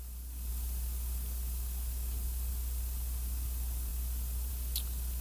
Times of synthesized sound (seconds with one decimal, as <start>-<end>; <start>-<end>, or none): none

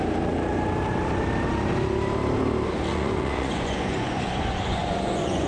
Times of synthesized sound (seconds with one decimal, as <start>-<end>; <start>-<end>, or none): 2.9-5.5